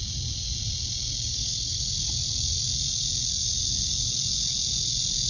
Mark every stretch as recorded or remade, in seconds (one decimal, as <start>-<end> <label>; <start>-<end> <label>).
0.0-1.3 recorded; 1.3-1.8 remade; 1.8-5.3 recorded